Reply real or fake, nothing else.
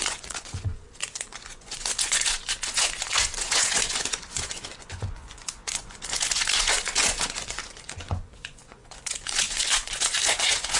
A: fake